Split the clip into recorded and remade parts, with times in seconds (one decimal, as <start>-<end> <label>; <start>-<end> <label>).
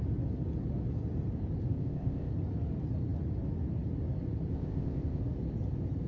0.0-1.7 recorded; 1.7-2.3 remade; 2.3-4.5 recorded; 4.5-5.2 remade; 5.2-6.1 recorded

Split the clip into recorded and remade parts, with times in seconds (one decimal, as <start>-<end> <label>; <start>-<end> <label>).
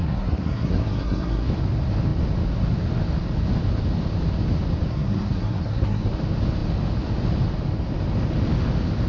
0.0-1.5 remade; 1.5-4.9 recorded; 4.9-6.1 remade; 6.1-9.1 recorded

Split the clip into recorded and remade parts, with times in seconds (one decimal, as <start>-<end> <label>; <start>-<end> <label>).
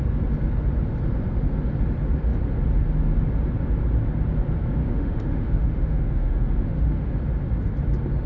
0.0-4.8 recorded; 4.8-7.1 remade; 7.1-8.3 recorded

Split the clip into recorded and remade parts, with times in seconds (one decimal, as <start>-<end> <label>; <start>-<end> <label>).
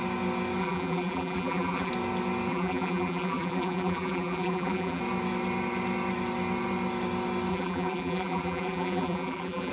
0.0-0.6 recorded; 0.6-1.9 remade; 1.9-2.5 recorded; 2.5-5.0 remade; 5.0-7.5 recorded; 7.5-9.7 remade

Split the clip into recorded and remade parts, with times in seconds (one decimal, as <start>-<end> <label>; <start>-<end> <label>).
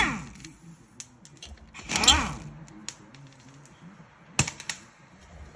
0.0-5.6 recorded